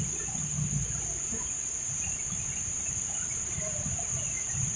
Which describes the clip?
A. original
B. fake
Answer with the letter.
A